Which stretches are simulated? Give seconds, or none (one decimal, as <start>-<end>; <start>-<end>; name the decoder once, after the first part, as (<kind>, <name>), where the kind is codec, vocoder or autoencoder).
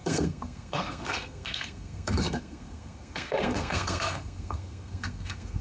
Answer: 0.0-5.6 (codec, SNAC)